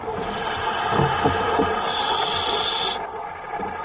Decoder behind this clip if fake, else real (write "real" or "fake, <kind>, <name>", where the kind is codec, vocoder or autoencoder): fake, vocoder, BigVGAN v2